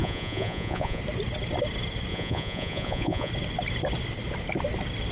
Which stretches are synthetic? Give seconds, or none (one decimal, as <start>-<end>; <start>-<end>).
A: 0.0-1.0; 2.1-3.3